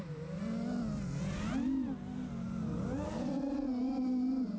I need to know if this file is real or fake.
real